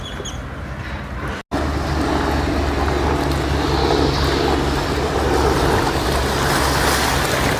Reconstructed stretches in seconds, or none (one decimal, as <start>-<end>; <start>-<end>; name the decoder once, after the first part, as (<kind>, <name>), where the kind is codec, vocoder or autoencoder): none